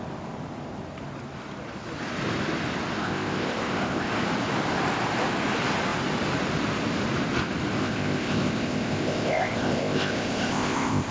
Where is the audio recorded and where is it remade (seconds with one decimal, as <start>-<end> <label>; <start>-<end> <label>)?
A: 0.0-3.0 recorded; 3.0-4.1 remade; 4.1-7.8 recorded; 7.8-11.1 remade